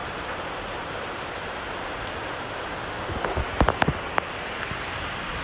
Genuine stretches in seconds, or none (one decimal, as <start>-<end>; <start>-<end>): 0.9-5.4